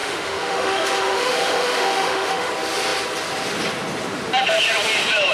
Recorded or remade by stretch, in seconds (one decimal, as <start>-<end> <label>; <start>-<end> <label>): 0.0-2.5 remade; 2.5-5.3 recorded